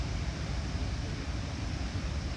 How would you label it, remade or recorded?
recorded